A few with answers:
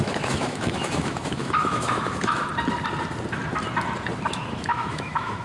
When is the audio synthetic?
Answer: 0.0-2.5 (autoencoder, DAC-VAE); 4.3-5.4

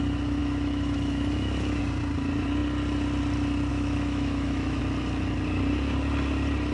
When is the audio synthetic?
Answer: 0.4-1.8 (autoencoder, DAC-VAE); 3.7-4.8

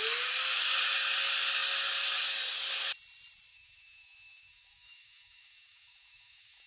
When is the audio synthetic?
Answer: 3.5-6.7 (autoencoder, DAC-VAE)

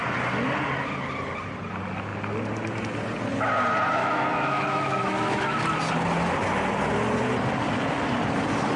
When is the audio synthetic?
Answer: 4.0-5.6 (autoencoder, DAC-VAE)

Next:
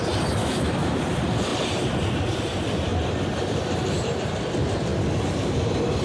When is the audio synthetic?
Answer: 0.4-1.0 (autoencoder, DAC-VAE)

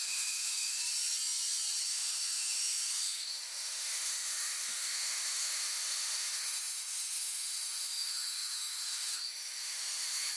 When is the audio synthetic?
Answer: 0.0-0.8 (autoencoder, DAC-VAE); 1.8-10.4